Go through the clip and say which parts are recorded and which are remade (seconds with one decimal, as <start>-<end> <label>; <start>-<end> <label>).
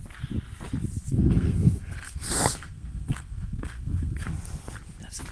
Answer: 0.0-1.1 recorded; 1.1-4.3 remade; 4.3-5.3 recorded